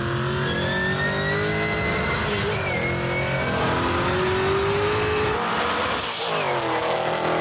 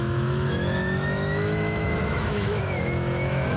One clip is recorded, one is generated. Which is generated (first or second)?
second